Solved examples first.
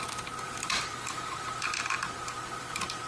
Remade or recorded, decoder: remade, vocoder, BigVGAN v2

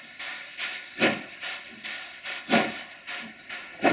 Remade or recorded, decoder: recorded